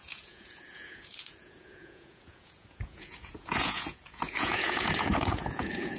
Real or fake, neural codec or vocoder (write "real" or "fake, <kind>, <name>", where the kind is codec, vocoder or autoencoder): fake, vocoder, Vocos